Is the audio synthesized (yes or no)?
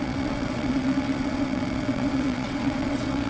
yes